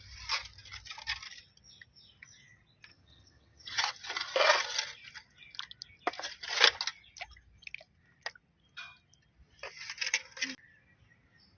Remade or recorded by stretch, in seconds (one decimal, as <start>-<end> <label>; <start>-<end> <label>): 0.0-2.9 recorded; 2.9-3.8 remade; 3.8-11.6 recorded